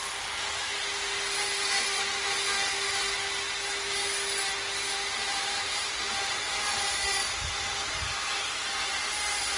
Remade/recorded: recorded